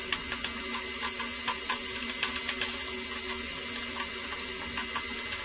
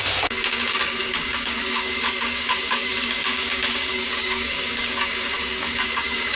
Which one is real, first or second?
first